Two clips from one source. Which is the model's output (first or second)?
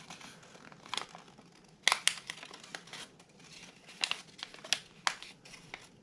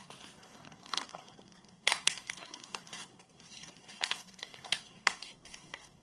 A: second